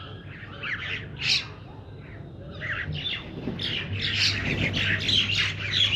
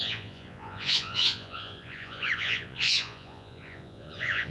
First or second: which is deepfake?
second